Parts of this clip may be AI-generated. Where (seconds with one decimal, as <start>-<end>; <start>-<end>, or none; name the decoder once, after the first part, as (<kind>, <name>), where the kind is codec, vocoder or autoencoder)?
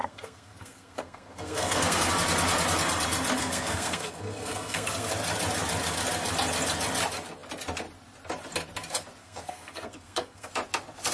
0.0-2.1 (codec, SNAC); 3.4-5.1; 9.2-10.5